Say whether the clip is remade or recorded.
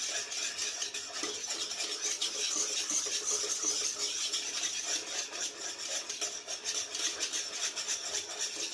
recorded